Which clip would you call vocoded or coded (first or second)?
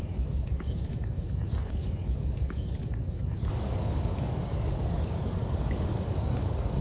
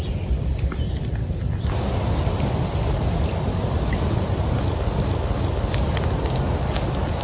first